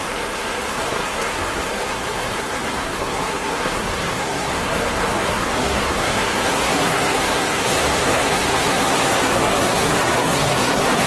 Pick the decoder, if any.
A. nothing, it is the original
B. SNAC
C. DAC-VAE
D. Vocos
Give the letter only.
B